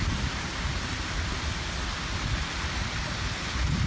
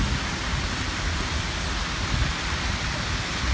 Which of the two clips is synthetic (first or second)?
first